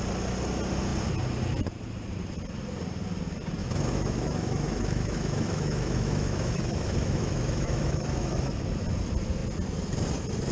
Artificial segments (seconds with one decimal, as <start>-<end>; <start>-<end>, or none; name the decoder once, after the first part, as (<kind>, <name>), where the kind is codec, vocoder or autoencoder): 3.6-8.6 (autoencoder, DAC-VAE)